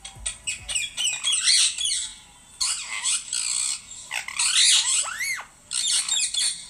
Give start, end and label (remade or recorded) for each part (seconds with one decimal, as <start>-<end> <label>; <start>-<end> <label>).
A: 0.0-6.7 recorded